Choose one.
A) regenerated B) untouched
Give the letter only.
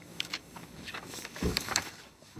A